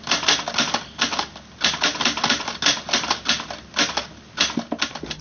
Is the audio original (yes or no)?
yes